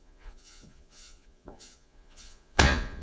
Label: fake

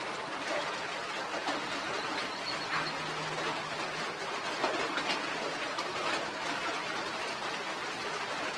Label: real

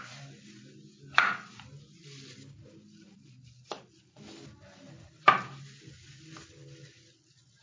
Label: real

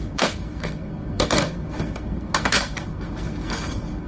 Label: fake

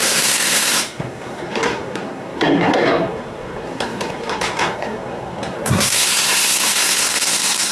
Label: fake